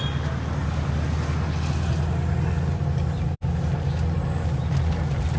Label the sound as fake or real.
real